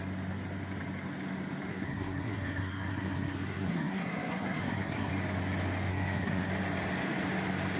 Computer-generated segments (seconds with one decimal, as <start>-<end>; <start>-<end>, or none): 1.7-5.1; 5.9-6.5